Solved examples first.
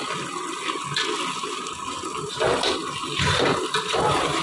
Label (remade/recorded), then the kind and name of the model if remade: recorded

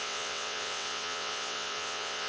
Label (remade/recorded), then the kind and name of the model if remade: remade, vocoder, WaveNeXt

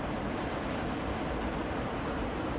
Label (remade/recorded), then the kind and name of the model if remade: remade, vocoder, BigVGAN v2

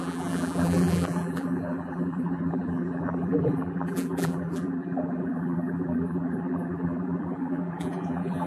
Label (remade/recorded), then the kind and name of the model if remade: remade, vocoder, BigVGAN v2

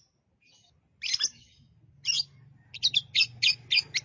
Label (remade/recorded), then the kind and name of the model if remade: recorded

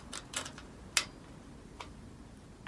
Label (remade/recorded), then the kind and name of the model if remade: recorded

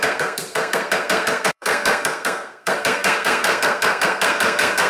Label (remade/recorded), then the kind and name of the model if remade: remade, codec, SNAC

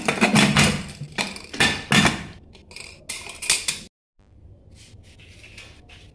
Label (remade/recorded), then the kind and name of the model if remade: recorded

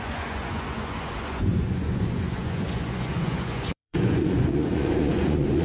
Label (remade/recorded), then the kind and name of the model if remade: remade, vocoder, Vocos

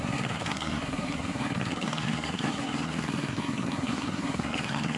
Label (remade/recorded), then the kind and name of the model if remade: remade, codec, SNAC